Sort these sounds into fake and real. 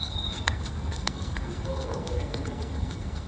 fake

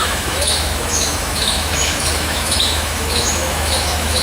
fake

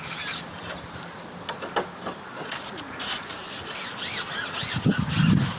real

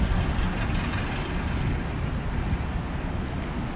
real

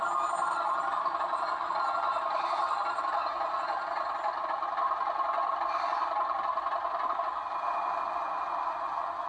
real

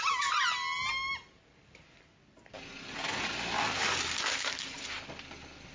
real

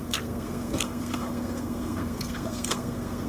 fake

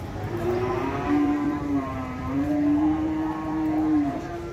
fake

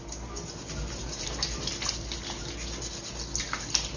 real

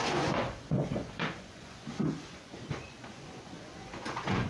fake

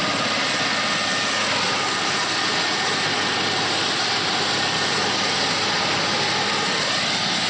real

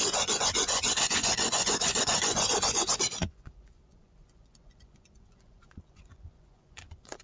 fake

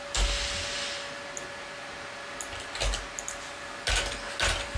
real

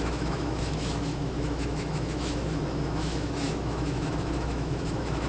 fake